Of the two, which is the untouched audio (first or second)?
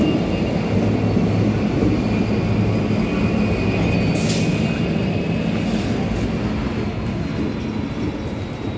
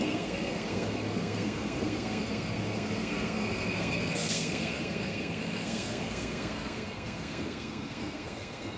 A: first